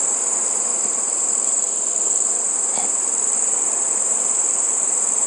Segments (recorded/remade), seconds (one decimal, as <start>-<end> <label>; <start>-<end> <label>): 0.0-5.3 remade

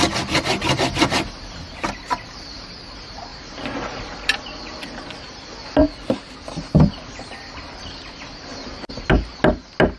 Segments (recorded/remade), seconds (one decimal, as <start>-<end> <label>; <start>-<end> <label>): 0.0-3.3 recorded; 3.3-4.4 remade; 4.4-10.0 recorded

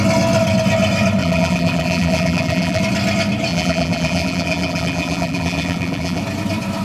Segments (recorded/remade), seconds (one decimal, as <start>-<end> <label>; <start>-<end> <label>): 0.0-1.2 recorded; 1.2-2.8 remade; 2.8-3.5 recorded; 3.5-6.2 remade; 6.2-6.8 recorded